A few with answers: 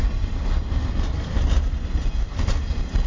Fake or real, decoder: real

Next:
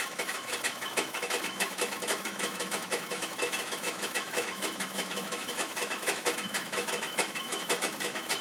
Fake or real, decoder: fake, autoencoder, DAC-VAE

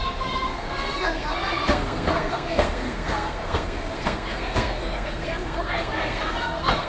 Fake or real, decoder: fake, codec, SNAC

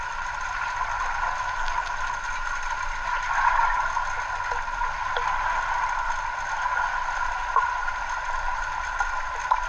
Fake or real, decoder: real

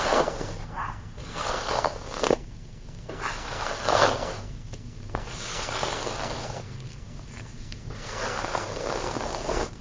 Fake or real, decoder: fake, codec, SNAC